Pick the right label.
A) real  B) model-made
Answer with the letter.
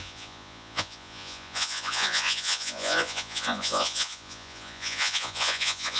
B